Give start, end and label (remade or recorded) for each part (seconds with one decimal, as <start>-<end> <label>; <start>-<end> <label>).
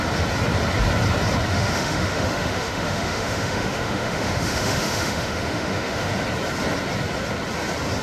0.0-1.5 recorded; 1.5-6.1 remade; 6.1-8.0 recorded